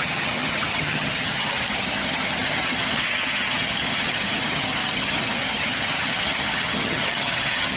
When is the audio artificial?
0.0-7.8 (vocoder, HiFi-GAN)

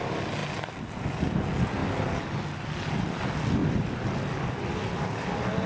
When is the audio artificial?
none

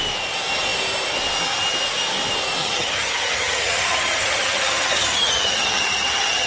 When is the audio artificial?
2.6-6.5 (vocoder, HiFi-GAN)

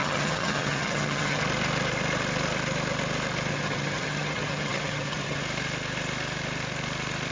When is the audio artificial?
0.0-1.4 (vocoder, HiFi-GAN); 3.5-5.4

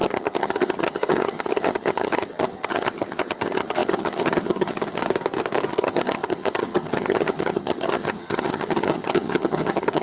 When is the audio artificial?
0.0-5.0 (vocoder, HiFi-GAN); 5.7-10.0

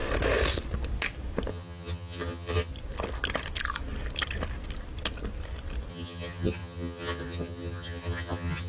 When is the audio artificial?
1.5-2.7 (vocoder, HiFi-GAN); 5.9-8.7

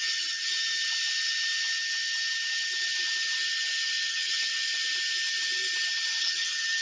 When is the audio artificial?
0.0-0.5 (vocoder, HiFi-GAN); 4.1-4.5; 6.2-6.8